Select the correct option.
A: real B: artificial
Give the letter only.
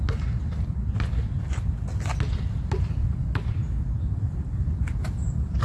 A